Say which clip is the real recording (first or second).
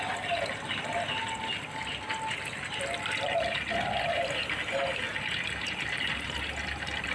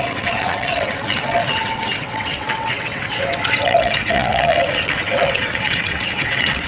first